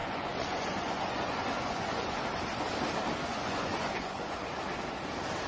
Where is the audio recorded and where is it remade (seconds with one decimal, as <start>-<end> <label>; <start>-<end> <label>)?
0.0-2.2 remade; 2.2-3.3 recorded; 3.3-4.6 remade; 4.6-5.5 recorded